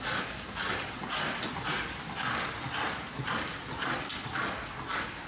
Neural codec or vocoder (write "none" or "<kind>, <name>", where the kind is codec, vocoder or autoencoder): none